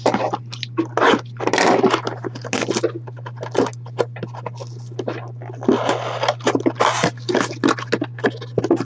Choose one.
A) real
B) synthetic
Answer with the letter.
A